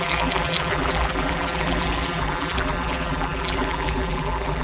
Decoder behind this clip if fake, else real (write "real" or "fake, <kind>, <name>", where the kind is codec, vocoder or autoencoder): fake, vocoder, BigVGAN v2